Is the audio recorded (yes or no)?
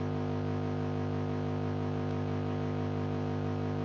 yes